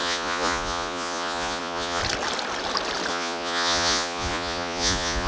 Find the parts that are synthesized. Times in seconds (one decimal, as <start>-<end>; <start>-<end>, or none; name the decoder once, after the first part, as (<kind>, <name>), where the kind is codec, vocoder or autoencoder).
0.0-2.0 (vocoder, Vocos); 3.1-5.3